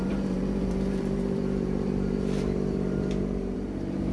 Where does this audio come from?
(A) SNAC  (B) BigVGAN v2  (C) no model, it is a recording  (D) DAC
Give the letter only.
B